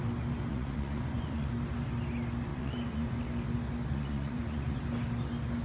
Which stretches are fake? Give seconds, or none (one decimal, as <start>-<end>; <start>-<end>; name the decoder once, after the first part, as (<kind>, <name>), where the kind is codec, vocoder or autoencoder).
0.5-1.5 (vocoder, Vocos); 2.5-3.2; 3.9-4.8